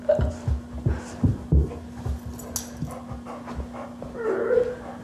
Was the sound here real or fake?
real